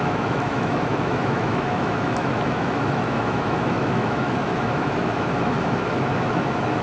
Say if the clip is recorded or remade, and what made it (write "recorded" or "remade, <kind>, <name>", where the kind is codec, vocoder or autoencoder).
remade, autoencoder, DAC-VAE